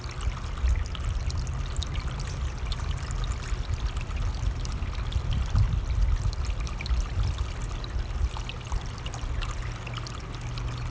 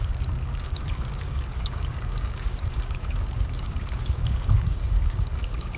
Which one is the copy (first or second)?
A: second